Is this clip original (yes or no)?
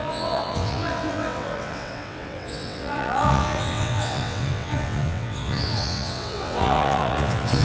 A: no